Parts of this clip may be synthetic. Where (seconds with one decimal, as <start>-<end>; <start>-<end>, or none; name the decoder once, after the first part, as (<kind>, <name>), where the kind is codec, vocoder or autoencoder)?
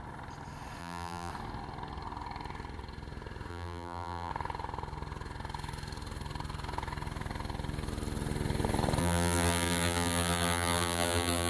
0.8-1.3 (vocoder, BigVGAN v2); 3.5-4.3; 9.0-11.5